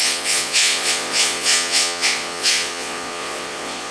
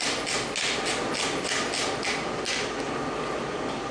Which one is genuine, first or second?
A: second